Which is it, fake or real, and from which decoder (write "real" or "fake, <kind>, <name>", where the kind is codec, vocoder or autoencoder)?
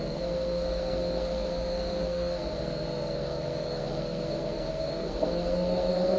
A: fake, codec, SNAC